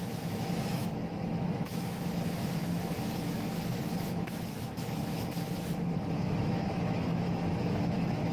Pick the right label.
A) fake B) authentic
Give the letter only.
A